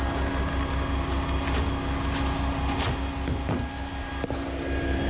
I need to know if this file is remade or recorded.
recorded